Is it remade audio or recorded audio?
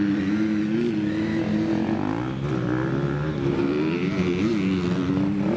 recorded